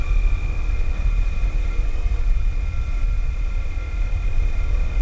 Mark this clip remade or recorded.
recorded